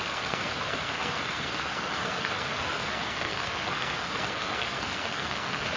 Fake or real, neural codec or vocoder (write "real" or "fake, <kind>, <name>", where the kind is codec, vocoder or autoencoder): fake, codec, SNAC